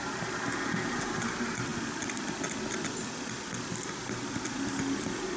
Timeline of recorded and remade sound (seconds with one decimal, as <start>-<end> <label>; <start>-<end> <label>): 0.0-5.4 recorded